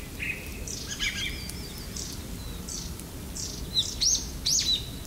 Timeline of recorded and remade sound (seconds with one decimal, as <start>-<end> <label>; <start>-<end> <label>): 0.0-0.5 recorded; 0.5-3.6 remade; 3.6-5.1 recorded